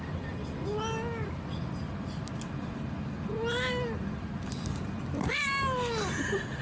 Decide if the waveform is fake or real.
real